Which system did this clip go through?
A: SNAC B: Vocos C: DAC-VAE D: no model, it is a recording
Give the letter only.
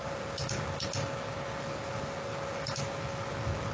D